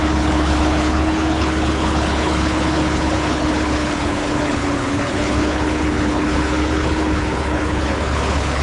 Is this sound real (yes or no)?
no